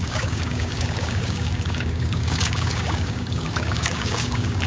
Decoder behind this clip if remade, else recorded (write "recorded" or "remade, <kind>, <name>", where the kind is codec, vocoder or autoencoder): remade, codec, DAC